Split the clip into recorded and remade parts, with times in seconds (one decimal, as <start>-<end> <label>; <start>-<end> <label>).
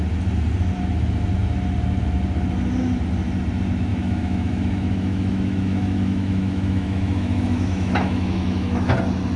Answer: 0.0-3.9 recorded; 3.9-8.9 remade; 8.9-9.4 recorded